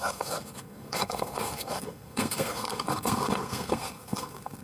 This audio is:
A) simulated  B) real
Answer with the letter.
A